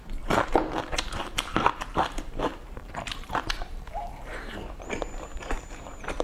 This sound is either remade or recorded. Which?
remade